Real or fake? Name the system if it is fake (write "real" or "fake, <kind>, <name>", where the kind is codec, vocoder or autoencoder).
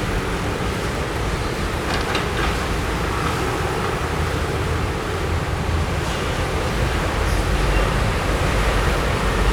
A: fake, vocoder, BigVGAN v2